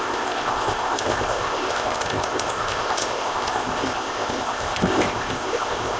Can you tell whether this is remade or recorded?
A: remade